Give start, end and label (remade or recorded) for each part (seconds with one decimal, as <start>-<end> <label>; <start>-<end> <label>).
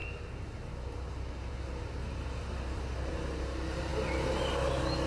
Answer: 0.0-5.1 recorded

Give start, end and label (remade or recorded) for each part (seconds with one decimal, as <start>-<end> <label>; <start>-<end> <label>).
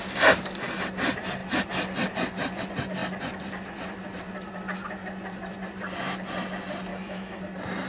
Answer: 0.0-6.9 recorded; 6.9-7.4 remade; 7.4-7.9 recorded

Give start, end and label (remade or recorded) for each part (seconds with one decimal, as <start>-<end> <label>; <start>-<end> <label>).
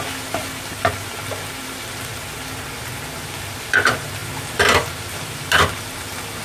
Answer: 0.0-6.4 recorded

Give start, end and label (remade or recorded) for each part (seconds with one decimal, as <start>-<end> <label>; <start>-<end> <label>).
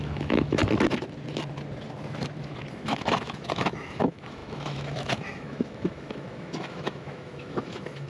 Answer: 0.0-0.6 remade; 0.6-2.7 recorded; 2.7-8.1 remade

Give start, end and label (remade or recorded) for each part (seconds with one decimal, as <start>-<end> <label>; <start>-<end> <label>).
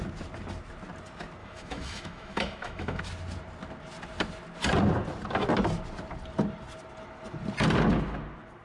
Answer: 0.0-1.4 recorded; 1.4-3.0 remade; 3.0-8.6 recorded